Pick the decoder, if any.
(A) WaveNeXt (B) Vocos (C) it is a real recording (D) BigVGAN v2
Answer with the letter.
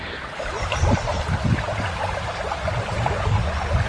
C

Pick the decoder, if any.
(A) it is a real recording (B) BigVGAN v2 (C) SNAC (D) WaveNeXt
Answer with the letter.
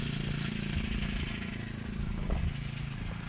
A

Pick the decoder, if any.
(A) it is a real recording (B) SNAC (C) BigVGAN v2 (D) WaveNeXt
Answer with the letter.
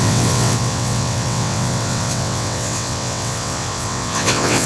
D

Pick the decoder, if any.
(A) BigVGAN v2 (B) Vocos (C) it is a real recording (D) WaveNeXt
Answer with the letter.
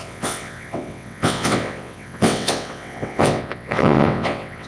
D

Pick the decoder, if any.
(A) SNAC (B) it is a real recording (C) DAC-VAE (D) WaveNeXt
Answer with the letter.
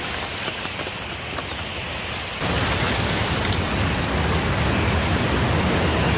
B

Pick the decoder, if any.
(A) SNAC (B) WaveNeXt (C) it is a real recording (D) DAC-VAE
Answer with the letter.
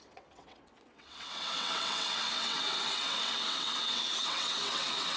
B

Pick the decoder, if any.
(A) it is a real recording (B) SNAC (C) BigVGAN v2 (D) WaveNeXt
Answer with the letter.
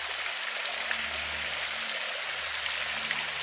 A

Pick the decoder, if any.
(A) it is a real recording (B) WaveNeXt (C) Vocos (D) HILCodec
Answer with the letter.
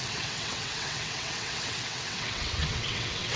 B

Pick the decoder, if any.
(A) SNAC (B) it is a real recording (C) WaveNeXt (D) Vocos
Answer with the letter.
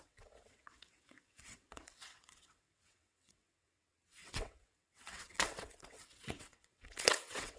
C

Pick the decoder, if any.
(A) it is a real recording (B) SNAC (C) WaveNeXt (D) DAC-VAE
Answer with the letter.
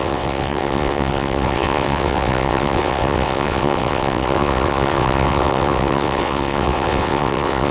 C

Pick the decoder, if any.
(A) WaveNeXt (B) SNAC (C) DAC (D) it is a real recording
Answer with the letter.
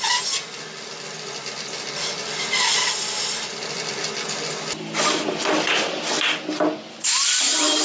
D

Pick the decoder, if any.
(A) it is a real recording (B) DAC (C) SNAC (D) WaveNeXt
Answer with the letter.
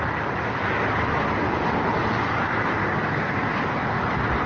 A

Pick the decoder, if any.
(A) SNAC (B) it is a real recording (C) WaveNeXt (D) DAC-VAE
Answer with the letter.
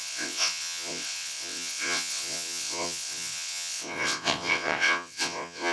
C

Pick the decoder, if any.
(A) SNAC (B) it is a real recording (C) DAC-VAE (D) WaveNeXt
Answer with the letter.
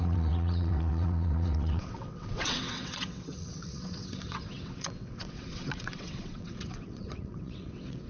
D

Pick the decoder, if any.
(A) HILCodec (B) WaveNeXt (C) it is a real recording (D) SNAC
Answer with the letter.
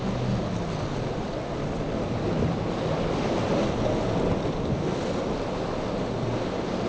C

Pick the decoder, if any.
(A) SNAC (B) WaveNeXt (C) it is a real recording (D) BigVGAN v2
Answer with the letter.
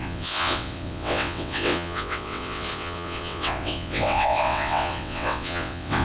B